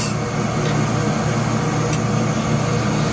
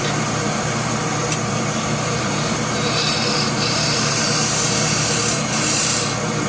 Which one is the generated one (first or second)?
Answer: second